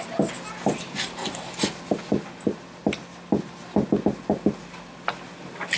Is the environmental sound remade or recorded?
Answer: recorded